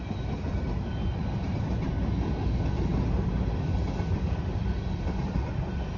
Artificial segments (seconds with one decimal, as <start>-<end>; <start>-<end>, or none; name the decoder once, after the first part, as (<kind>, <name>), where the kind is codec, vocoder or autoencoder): none